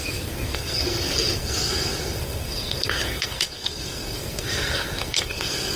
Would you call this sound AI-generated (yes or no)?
yes